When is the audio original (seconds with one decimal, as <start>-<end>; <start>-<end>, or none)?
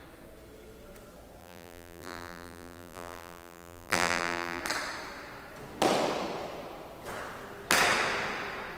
0.0-1.4; 4.6-8.8